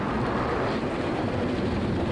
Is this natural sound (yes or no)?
yes